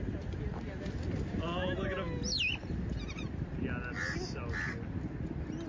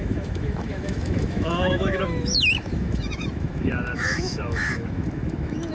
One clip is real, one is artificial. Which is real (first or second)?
first